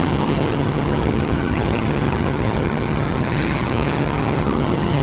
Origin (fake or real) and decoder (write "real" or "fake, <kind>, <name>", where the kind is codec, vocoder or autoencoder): fake, vocoder, HiFi-GAN